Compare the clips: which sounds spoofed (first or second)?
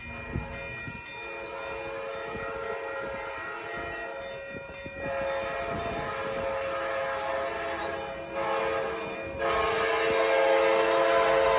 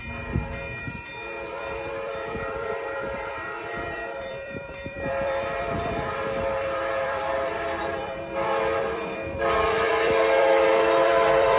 second